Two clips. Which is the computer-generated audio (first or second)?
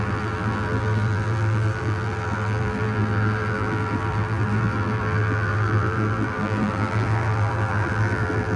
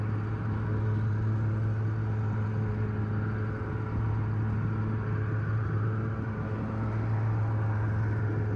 first